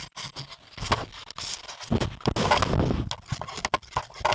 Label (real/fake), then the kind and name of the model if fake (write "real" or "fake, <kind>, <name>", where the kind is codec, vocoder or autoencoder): real